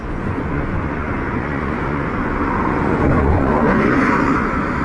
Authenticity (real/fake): fake